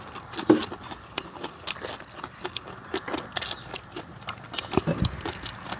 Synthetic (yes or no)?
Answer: no